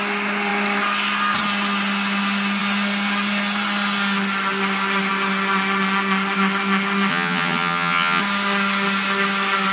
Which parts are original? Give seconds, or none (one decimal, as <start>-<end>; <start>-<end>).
0.0-7.1; 8.2-9.7